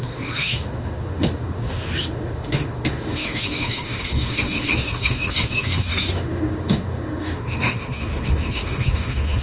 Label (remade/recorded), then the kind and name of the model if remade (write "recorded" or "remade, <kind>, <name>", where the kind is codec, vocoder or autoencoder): remade, autoencoder, DAC-VAE